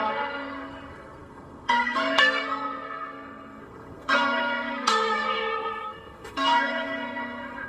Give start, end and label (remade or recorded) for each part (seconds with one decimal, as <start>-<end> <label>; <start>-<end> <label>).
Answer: 0.0-7.7 remade